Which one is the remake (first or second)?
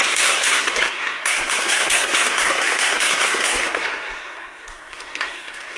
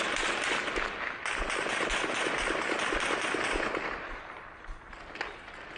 first